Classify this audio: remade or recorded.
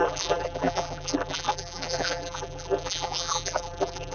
remade